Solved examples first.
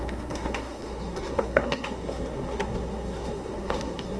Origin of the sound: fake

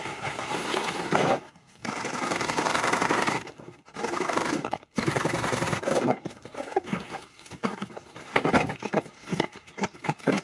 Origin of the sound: fake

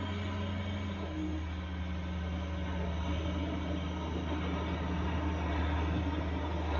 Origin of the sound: real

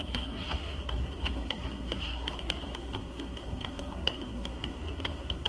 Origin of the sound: fake